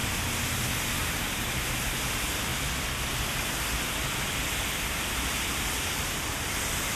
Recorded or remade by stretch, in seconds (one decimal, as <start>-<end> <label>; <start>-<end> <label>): 0.0-2.5 recorded; 2.5-7.0 remade